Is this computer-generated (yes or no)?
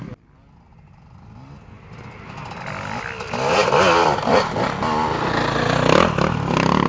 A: no